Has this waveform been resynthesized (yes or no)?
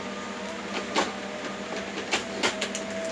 no